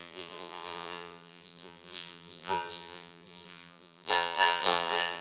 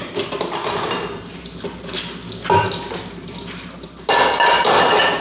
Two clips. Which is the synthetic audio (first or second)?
first